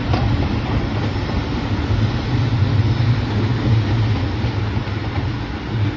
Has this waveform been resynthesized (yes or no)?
no